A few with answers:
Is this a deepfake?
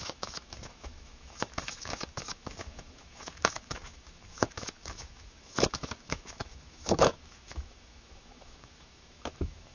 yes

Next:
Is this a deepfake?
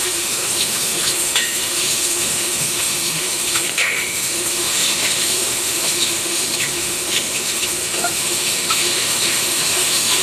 yes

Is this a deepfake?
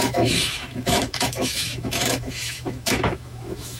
yes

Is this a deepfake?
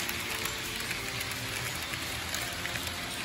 no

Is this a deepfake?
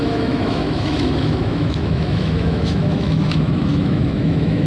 yes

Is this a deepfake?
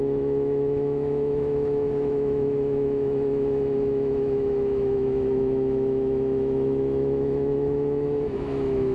yes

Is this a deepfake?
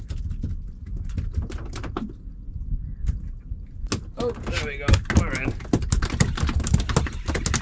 no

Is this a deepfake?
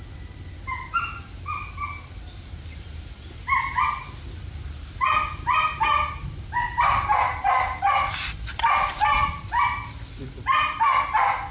no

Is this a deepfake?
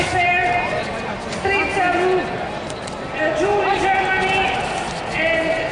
no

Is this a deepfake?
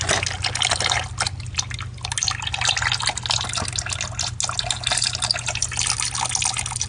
no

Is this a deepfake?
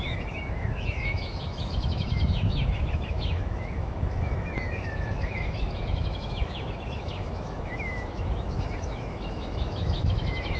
yes